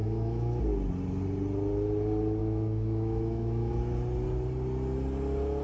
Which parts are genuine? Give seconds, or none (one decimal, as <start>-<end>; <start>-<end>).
0.6-2.4; 3.7-5.6